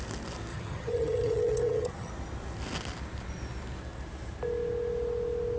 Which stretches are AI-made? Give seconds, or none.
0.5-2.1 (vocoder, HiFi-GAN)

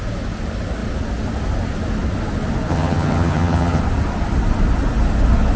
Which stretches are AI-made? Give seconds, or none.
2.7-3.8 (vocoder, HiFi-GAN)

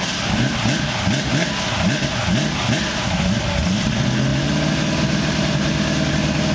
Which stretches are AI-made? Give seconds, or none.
none

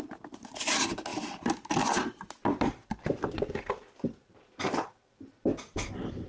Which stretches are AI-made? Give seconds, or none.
none

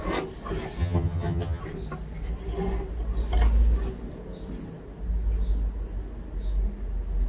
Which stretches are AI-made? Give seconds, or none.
0.8-1.6 (vocoder, HiFi-GAN)

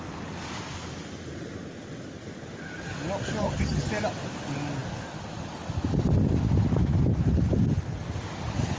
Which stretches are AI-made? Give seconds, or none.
3.4-3.9 (vocoder, HiFi-GAN)

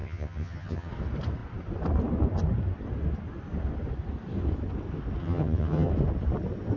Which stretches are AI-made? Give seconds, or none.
0.0-0.9 (vocoder, HiFi-GAN); 5.2-5.9